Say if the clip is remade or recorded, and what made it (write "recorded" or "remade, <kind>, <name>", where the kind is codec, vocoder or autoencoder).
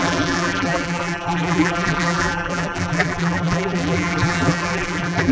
remade, vocoder, BigVGAN v2